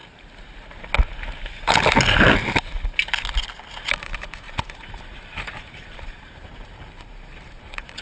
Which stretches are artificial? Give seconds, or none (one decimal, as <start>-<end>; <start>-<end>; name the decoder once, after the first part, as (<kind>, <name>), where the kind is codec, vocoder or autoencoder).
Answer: 4.0-8.0 (vocoder, BigVGAN v2)